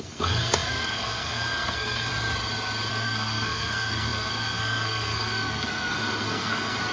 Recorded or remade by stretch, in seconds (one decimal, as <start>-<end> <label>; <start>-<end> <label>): 0.0-2.1 remade; 2.1-2.9 recorded; 2.9-6.9 remade